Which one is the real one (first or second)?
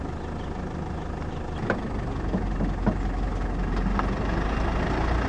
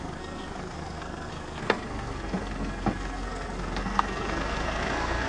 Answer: first